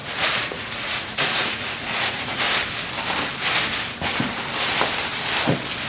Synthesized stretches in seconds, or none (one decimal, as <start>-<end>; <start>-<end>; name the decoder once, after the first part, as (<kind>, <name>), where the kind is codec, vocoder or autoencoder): 0.0-2.4 (vocoder, Vocos)